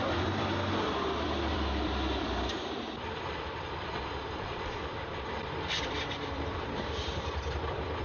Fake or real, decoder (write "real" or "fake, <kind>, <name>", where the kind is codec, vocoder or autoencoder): fake, vocoder, BigVGAN v2